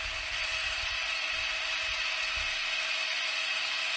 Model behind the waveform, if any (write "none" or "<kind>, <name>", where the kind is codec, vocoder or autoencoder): none